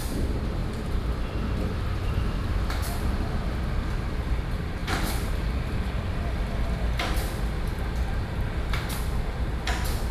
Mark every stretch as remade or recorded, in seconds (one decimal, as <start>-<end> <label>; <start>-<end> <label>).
0.0-0.6 recorded; 0.6-4.3 remade; 4.3-4.8 recorded; 4.8-6.4 remade; 6.4-10.1 recorded